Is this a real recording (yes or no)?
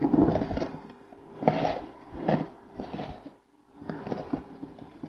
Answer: yes